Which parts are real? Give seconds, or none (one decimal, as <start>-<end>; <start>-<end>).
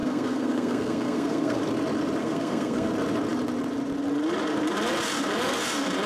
1.6-2.2; 2.9-6.1